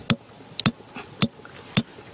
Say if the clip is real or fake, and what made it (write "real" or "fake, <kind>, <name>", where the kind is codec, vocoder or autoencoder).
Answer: real